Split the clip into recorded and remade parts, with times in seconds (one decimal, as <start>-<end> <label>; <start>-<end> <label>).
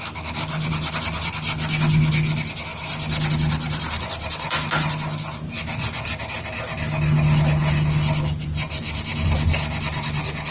0.0-10.5 recorded